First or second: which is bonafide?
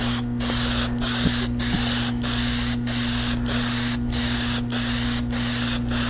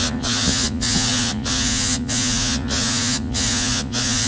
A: first